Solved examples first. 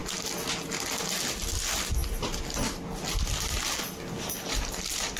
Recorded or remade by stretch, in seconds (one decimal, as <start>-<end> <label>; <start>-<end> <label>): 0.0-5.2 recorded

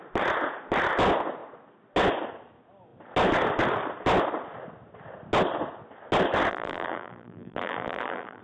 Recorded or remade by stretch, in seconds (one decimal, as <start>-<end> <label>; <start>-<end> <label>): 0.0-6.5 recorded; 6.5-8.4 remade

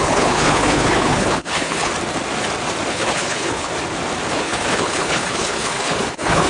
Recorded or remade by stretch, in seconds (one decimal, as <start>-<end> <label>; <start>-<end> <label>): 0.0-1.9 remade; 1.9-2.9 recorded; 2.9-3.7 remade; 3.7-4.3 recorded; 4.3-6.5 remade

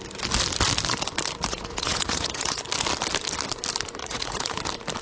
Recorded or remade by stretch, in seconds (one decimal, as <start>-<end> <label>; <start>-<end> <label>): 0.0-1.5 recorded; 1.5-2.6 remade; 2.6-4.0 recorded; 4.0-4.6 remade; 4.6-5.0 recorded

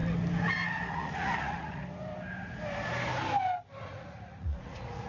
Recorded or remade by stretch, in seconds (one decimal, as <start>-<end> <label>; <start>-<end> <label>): 0.0-0.9 recorded; 0.9-1.8 remade; 1.8-3.8 recorded; 3.8-5.1 remade

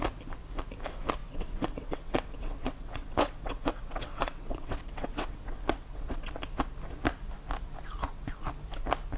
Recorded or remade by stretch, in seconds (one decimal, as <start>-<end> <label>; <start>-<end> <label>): 0.0-1.2 recorded; 1.2-6.3 remade; 6.3-9.2 recorded

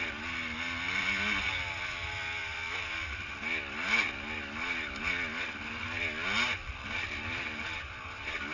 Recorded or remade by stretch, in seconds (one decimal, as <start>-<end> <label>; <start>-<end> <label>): 0.0-2.4 recorded; 2.4-3.3 remade; 3.3-6.6 recorded; 6.6-7.8 remade; 7.8-8.5 recorded